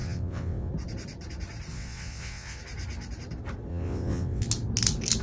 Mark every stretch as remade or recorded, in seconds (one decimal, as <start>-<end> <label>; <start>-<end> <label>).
0.0-0.7 remade; 0.7-1.7 recorded; 1.7-2.6 remade; 2.6-3.7 recorded; 3.7-4.4 remade; 4.4-5.2 recorded